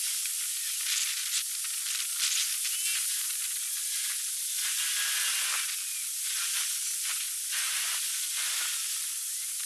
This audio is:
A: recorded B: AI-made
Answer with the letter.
A